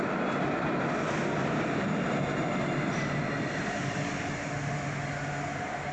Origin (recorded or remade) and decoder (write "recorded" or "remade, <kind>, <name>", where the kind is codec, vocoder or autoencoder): recorded